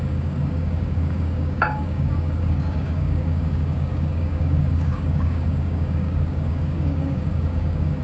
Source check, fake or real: fake